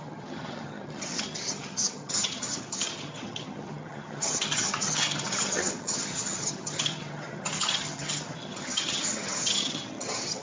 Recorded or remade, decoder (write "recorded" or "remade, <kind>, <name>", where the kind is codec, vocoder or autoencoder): remade, vocoder, HiFi-GAN